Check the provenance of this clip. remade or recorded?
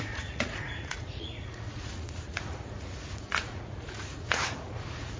remade